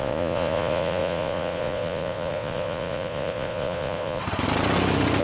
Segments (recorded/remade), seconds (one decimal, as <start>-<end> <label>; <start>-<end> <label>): 0.0-4.2 remade; 4.2-5.2 recorded